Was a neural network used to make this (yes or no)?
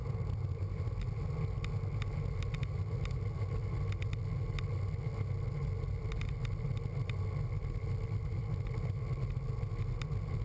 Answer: no